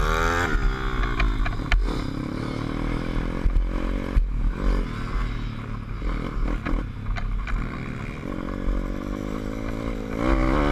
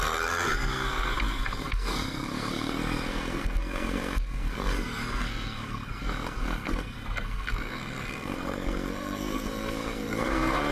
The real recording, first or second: first